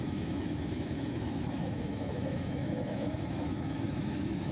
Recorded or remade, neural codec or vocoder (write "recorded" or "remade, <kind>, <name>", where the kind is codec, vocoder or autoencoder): remade, autoencoder, DAC-VAE